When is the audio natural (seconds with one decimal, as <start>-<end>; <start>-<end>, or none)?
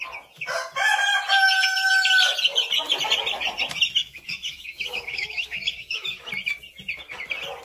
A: 0.0-4.0; 6.3-7.6